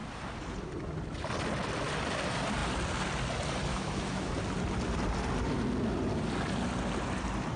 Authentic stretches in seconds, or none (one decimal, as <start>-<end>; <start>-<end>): 0.0-3.7; 4.3-7.6